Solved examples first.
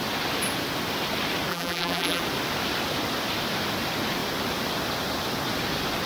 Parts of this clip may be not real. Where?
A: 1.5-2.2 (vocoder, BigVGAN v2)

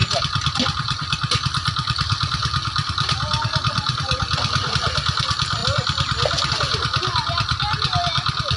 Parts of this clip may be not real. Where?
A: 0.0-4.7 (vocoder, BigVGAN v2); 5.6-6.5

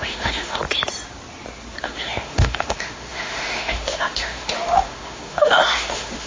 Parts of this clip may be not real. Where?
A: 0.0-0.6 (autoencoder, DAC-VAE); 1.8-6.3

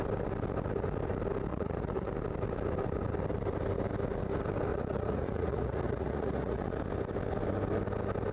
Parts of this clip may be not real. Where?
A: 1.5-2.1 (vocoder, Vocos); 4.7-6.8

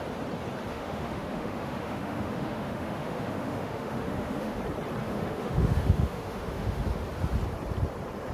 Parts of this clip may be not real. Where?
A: 0.7-4.6 (autoencoder, DAC-VAE); 5.0-6.8

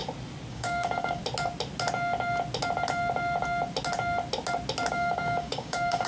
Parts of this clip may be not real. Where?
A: 0.5-1.2 (codec, DAC); 4.9-6.1